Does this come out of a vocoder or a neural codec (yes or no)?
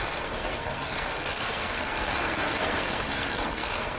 yes